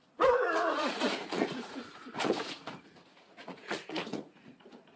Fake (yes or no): yes